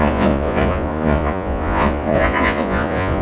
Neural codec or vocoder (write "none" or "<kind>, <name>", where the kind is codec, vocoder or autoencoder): vocoder, Vocos